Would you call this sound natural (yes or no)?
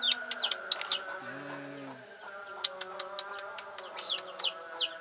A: yes